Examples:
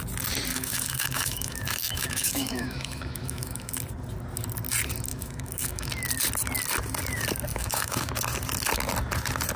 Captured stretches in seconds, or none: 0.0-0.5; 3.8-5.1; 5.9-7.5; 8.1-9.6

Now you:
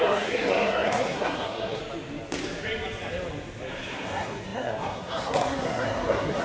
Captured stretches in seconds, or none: 1.8-3.7